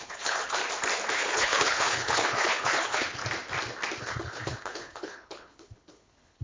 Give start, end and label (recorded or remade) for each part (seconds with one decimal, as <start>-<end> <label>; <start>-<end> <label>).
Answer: 0.0-0.6 remade; 0.6-1.1 recorded; 1.1-3.2 remade; 3.2-4.0 recorded; 4.0-6.4 remade